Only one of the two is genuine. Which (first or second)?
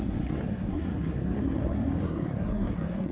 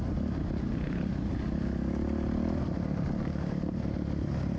second